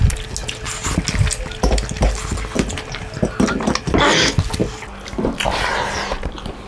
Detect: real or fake real